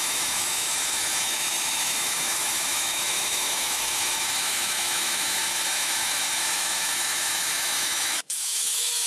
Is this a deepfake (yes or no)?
yes